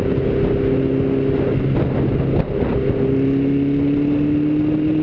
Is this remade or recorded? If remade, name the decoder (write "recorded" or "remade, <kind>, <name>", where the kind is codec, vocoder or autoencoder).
recorded